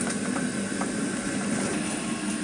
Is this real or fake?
real